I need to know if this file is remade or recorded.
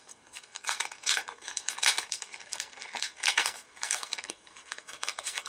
remade